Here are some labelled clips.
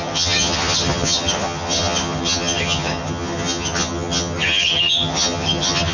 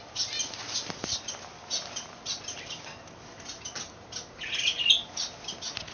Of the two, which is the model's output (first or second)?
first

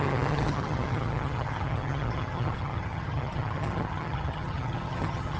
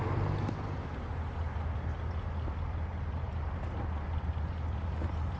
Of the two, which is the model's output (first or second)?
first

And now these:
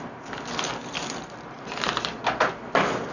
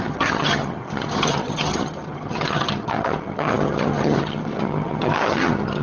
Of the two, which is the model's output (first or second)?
second